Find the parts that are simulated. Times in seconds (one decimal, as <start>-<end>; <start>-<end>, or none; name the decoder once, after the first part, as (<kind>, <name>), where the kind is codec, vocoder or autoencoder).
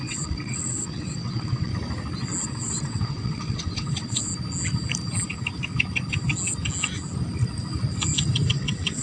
0.0-1.7 (vocoder, WaveNeXt); 2.4-4.3; 8.5-9.0